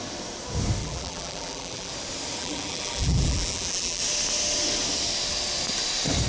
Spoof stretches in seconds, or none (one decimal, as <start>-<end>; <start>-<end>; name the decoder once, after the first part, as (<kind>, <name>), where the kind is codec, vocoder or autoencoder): 0.8-1.9 (vocoder, BigVGAN v2); 2.4-4.0